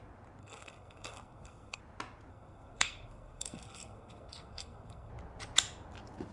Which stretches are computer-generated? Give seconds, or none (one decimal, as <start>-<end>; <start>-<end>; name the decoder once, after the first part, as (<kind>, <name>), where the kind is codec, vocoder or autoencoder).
0.4-1.8 (codec, SNAC); 2.3-5.1